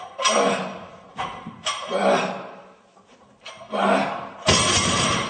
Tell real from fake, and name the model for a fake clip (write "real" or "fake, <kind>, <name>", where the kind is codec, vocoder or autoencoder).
real